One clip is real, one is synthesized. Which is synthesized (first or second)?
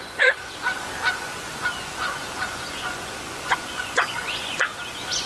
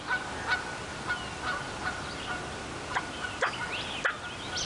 first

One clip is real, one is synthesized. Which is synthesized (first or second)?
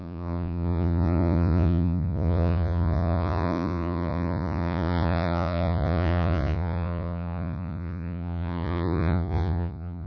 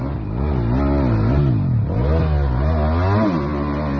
first